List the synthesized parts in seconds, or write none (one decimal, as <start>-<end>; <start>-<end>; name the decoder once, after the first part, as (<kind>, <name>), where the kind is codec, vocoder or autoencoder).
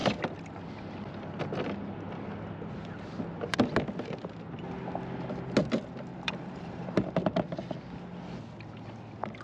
6.1-7.1 (vocoder, BigVGAN v2)